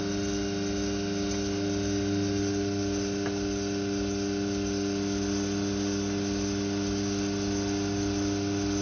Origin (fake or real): real